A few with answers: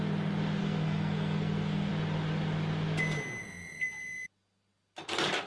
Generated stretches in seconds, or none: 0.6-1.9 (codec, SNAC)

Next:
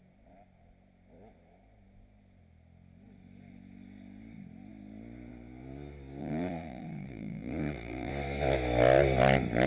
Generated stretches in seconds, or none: 6.2-8.1 (vocoder, Vocos)